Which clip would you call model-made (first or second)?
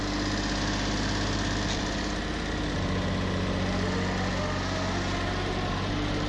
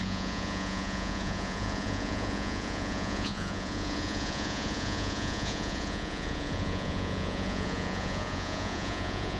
second